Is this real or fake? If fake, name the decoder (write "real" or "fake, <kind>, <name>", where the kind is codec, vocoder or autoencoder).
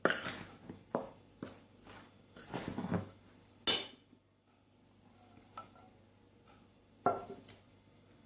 real